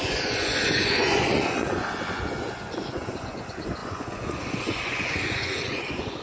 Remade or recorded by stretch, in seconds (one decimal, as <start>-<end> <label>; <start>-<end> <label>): 0.0-6.2 remade